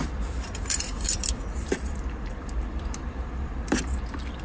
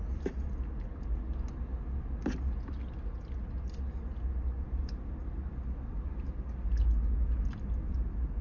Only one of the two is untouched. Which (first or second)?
second